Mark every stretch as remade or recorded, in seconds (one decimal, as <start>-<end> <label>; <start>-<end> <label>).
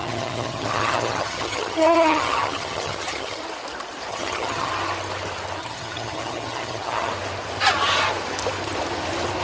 0.0-3.4 remade; 3.4-4.1 recorded; 4.1-4.7 remade; 4.7-5.6 recorded; 5.6-7.1 remade; 7.1-9.4 recorded